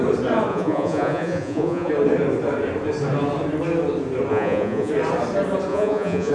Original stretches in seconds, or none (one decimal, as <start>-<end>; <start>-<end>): 0.0-0.5; 1.9-4.3; 4.9-5.7